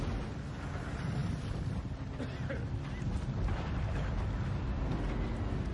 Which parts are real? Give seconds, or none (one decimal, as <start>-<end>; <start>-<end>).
0.0-1.2; 4.2-5.7

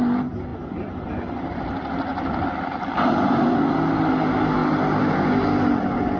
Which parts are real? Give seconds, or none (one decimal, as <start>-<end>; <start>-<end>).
0.0-2.1; 3.5-6.2

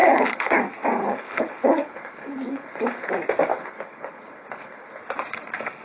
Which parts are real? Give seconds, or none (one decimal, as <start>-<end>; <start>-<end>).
0.6-1.0; 3.1-3.5; 5.0-5.8

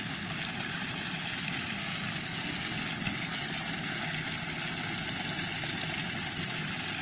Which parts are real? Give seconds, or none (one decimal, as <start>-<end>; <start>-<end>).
0.0-1.8; 2.5-7.0

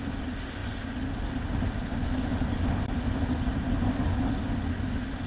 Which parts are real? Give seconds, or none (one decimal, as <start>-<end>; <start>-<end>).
0.0-5.3

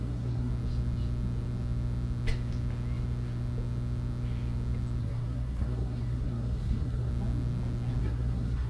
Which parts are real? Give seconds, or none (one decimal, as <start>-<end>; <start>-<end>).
0.5-5.0; 7.1-8.0

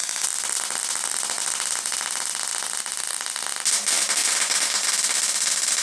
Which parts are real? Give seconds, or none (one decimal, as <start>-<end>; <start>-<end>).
0.0-5.8

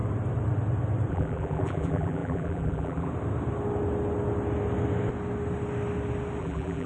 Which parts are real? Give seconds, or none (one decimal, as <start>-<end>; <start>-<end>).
0.0-1.1; 3.1-6.4